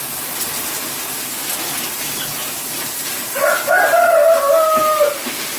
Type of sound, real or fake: real